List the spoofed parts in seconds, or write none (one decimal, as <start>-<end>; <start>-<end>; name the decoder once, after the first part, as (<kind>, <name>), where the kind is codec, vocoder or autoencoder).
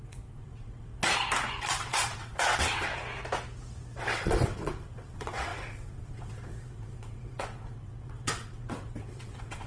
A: 0.0-0.9 (vocoder, WaveNeXt); 1.6-2.9; 4.0-9.7